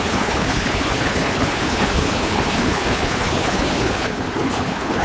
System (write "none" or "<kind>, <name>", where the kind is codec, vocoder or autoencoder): codec, HILCodec